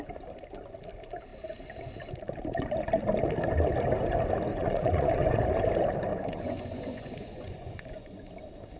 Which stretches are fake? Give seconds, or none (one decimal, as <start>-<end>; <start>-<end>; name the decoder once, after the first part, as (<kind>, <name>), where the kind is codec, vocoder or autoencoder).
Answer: 4.5-5.4 (vocoder, Vocos); 6.1-8.3